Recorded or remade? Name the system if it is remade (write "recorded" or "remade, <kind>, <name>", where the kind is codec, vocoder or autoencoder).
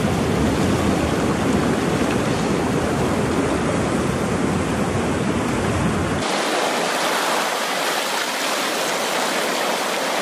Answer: recorded